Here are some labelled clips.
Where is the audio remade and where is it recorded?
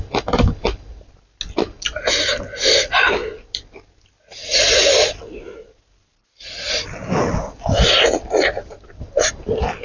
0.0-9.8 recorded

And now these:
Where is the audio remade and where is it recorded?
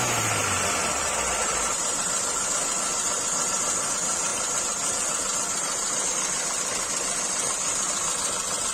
0.0-8.7 recorded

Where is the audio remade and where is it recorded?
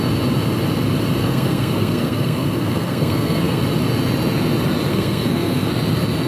0.0-1.2 recorded; 1.2-3.6 remade; 3.6-4.9 recorded; 4.9-5.7 remade; 5.7-6.3 recorded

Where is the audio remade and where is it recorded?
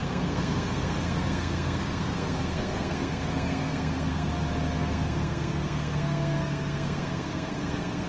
0.0-4.3 remade; 4.3-4.8 recorded; 4.8-8.1 remade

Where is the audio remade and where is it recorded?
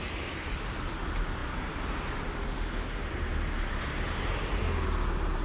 0.0-5.4 recorded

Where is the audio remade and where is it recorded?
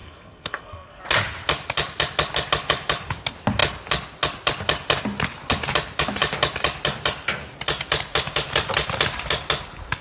0.0-1.0 remade; 1.0-10.0 recorded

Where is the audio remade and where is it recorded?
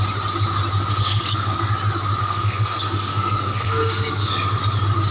0.0-0.9 recorded; 0.9-1.7 remade; 1.7-2.2 recorded; 2.2-4.6 remade; 4.6-5.1 recorded